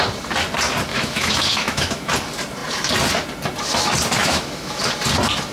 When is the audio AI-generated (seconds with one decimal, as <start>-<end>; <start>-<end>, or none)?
0.9-2.1; 4.2-4.8